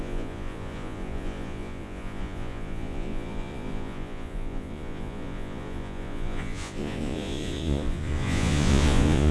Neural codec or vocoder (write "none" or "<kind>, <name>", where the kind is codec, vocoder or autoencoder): vocoder, Vocos